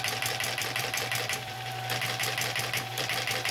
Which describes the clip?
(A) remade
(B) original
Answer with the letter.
A